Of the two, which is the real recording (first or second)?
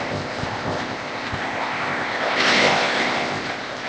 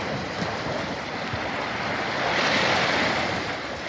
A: second